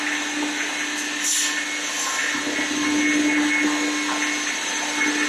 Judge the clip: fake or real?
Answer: real